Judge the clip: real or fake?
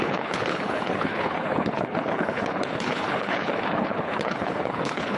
fake